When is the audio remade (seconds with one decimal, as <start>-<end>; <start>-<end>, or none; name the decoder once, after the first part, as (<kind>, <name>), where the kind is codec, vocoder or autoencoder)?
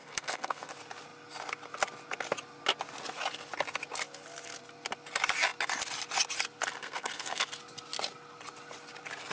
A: 0.0-0.7 (codec, SNAC); 6.8-7.4